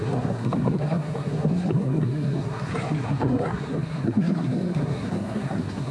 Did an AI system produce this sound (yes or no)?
yes